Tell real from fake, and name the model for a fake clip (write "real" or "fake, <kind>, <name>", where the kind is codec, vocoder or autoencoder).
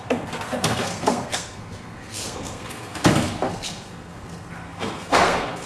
fake, codec, SNAC